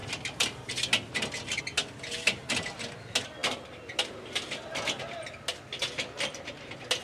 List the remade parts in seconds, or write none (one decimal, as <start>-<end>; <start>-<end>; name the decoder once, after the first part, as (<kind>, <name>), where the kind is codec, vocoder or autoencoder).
none